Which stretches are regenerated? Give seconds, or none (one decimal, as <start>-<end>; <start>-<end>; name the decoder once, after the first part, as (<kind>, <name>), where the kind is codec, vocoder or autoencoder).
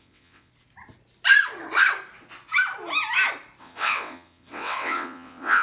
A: 0.0-0.5 (vocoder, WaveNeXt); 3.6-5.6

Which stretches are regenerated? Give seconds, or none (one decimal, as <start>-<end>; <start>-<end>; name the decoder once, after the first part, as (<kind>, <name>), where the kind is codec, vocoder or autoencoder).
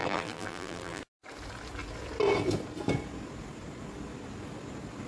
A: 0.0-1.0 (vocoder, BigVGAN v2)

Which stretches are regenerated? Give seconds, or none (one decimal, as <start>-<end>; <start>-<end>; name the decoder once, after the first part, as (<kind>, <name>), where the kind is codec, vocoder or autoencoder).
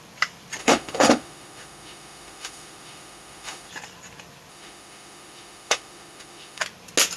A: 0.6-3.7 (autoencoder, DAC-VAE); 4.5-6.6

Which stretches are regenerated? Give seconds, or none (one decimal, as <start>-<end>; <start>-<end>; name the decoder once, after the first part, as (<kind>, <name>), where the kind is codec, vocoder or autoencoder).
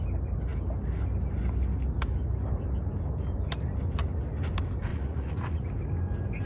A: 4.9-5.7 (vocoder, Vocos)